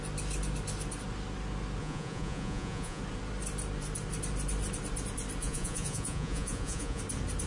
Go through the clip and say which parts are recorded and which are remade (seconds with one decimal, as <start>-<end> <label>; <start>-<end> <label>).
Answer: 0.0-1.8 recorded; 1.8-3.0 remade; 3.0-5.4 recorded; 5.4-7.0 remade; 7.0-7.5 recorded